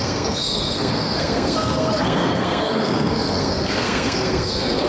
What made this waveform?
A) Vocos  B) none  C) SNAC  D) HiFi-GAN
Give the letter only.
C